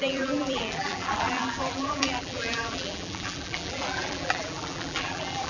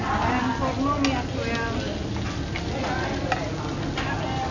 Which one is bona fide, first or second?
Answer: second